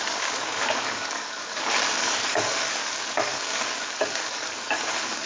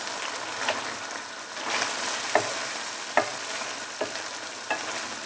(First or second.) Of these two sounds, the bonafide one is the second